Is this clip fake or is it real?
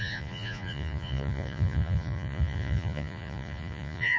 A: fake